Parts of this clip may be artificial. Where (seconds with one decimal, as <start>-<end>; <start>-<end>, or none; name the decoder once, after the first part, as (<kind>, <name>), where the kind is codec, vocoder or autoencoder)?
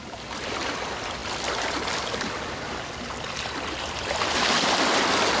none